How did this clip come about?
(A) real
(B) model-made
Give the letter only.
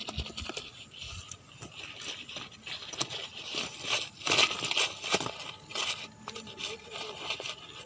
A